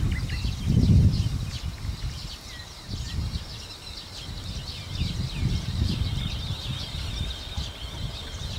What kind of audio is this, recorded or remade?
recorded